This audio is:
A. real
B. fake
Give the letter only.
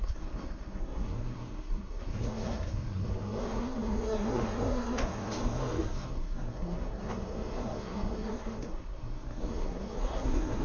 B